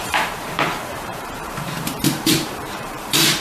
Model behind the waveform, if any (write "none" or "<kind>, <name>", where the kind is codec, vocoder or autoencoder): vocoder, BigVGAN v2